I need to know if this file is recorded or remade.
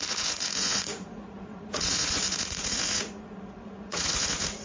remade